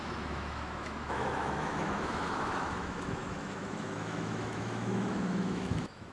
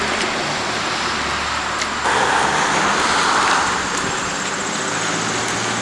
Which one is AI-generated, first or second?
first